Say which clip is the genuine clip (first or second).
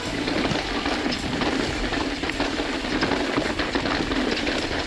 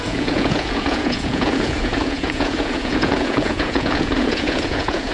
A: first